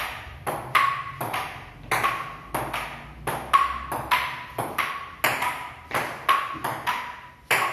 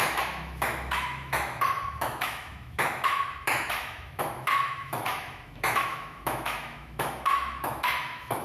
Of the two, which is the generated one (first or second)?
second